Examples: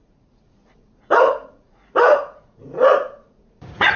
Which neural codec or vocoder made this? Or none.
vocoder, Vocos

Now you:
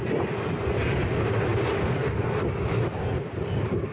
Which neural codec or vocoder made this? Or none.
none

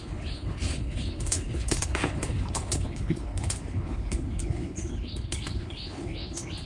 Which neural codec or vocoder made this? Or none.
codec, HILCodec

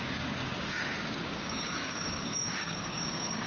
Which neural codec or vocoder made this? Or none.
codec, DAC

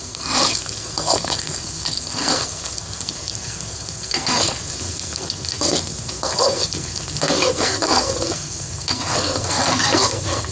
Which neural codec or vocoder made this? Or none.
codec, SNAC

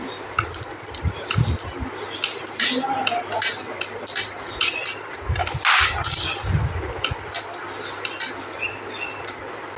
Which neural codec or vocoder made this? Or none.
none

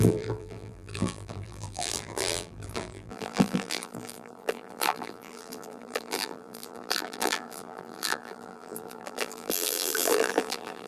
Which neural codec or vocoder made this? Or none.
vocoder, BigVGAN v2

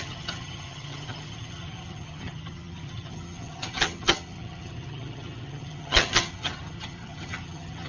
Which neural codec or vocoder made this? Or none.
vocoder, HiFi-GAN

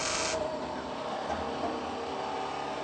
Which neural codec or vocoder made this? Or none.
none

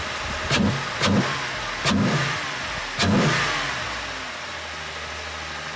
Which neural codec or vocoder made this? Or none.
none